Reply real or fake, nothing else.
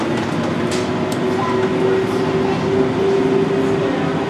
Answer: real